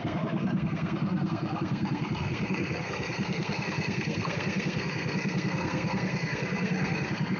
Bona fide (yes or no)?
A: no